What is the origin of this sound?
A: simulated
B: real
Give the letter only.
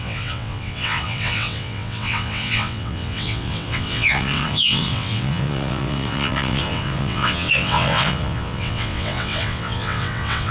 A